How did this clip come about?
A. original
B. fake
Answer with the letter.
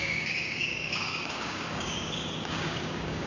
B